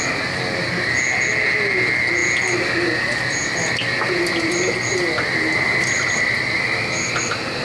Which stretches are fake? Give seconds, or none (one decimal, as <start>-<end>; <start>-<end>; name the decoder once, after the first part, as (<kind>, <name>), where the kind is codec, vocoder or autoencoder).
none